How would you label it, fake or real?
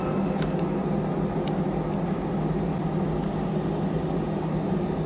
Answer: real